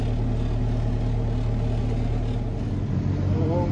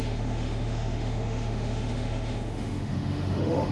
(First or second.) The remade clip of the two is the second